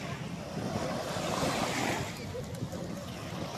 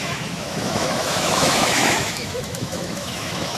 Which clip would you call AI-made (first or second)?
second